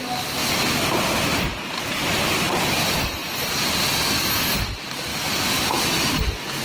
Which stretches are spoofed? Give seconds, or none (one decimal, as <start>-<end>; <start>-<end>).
0.4-0.9; 3.2-4.2; 5.1-5.8